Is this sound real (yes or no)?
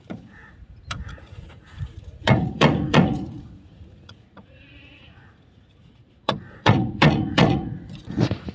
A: no